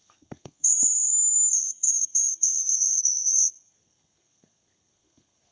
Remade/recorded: remade